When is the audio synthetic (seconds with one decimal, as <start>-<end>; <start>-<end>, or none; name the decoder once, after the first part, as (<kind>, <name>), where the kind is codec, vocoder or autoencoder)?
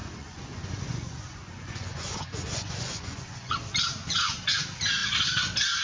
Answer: 0.0-3.5 (vocoder, Vocos)